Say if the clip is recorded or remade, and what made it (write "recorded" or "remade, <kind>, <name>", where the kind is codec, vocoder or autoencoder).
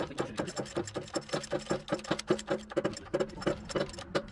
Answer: recorded